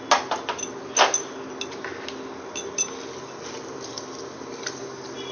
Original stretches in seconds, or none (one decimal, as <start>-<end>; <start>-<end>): 0.0-5.3